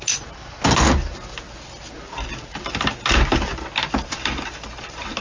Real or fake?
real